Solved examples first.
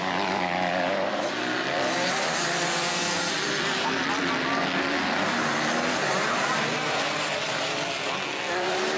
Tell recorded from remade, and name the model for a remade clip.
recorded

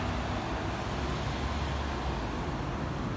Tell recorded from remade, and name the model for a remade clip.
recorded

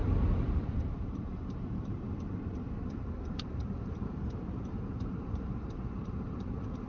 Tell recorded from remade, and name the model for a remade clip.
remade, vocoder, BigVGAN v2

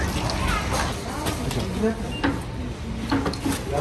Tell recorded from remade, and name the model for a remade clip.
recorded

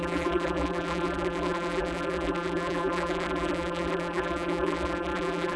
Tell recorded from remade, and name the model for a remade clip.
remade, vocoder, BigVGAN v2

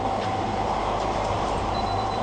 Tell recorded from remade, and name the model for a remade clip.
remade, vocoder, BigVGAN v2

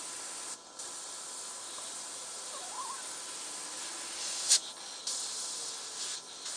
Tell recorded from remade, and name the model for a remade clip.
recorded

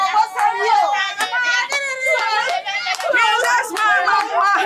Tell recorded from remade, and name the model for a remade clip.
recorded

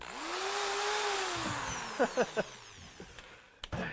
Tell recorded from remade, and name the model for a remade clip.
recorded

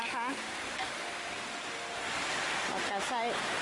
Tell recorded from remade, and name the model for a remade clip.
recorded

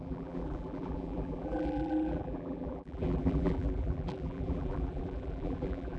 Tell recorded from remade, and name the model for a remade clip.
remade, vocoder, BigVGAN v2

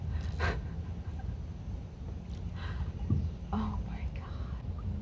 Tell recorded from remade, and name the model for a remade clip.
recorded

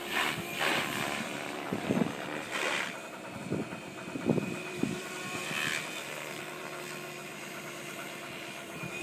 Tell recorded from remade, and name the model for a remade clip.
remade, vocoder, BigVGAN v2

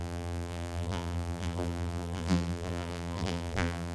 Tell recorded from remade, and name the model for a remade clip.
remade, vocoder, BigVGAN v2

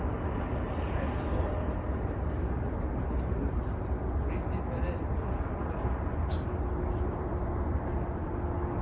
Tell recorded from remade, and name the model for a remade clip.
recorded